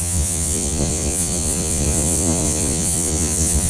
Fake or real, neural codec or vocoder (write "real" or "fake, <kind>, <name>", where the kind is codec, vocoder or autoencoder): fake, vocoder, Vocos